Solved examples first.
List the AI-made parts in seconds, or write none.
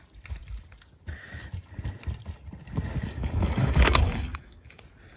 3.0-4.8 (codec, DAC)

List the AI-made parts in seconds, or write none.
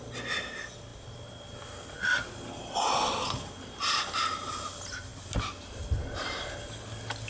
none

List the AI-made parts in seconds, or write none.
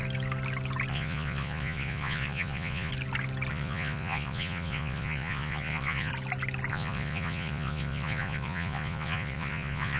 0.9-2.9 (vocoder, Vocos); 3.5-6.1; 6.7-10.0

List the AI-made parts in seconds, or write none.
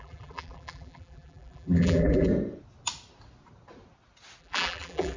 0.0-2.3 (vocoder, BigVGAN v2); 4.4-5.2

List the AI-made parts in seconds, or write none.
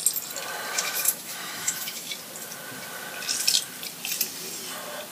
0.7-2.1 (autoencoder, DAC-VAE)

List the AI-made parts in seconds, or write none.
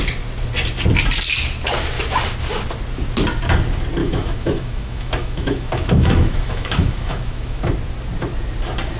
4.0-7.6 (autoencoder, DAC-VAE)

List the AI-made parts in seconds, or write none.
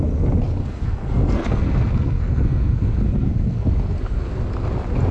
0.6-3.7 (codec, SNAC)